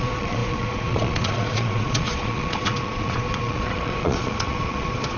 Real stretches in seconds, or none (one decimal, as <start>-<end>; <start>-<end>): none

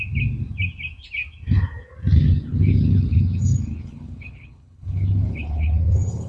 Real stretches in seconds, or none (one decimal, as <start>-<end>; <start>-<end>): 0.0-2.5

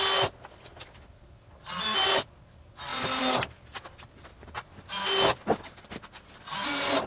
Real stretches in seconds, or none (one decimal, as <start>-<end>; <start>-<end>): 0.0-7.1

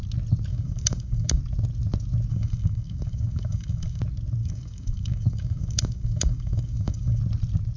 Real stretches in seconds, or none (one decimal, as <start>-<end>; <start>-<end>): 0.0-0.5; 1.4-2.3; 4.0-4.4; 7.2-7.8

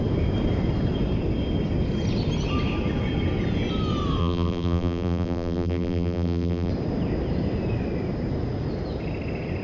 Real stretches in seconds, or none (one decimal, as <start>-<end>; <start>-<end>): 0.0-4.2; 6.7-9.6